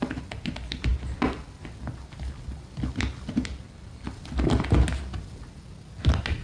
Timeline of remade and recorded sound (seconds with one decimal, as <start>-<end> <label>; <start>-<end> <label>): 0.0-6.4 recorded